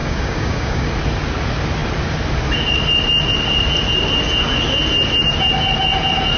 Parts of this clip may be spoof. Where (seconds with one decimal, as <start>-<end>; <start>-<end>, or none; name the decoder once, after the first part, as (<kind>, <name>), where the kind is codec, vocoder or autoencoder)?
0.0-0.9 (codec, DAC)